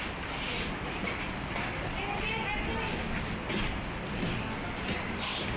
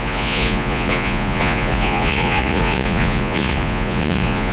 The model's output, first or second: second